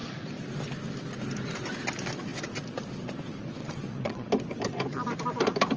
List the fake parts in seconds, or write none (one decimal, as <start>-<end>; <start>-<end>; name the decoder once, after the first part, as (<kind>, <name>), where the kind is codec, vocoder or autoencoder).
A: 3.6-4.3 (vocoder, WaveNeXt)